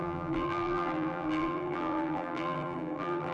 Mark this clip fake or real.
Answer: fake